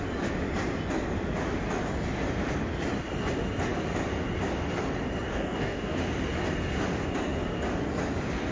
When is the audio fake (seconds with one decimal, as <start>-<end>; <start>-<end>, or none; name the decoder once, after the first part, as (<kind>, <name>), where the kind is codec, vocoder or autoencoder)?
5.3-6.0 (codec, DAC)